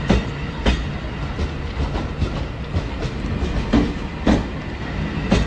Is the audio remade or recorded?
recorded